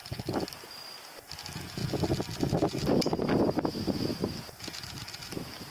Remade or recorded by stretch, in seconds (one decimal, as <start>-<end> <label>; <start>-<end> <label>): 0.0-5.7 recorded